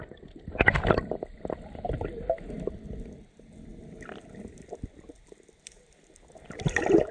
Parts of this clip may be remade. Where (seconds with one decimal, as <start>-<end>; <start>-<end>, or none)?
none